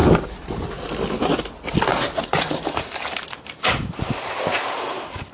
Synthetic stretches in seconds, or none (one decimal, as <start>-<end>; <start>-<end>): 1.9-5.3